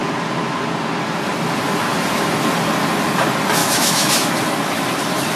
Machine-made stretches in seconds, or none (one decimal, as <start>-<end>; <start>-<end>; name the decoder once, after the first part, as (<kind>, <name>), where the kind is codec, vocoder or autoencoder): 3.6-4.3 (autoencoder, DAC-VAE)